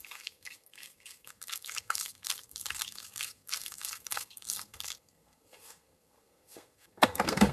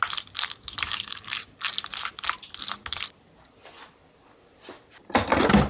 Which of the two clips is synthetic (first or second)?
first